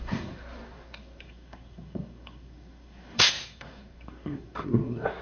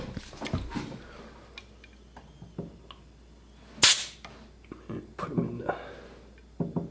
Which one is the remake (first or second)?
first